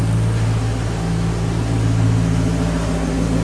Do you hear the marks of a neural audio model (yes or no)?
no